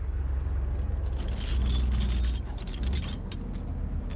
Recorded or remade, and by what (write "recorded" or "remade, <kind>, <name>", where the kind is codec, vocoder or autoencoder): recorded